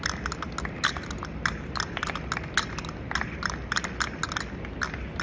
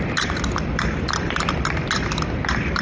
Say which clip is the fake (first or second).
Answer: second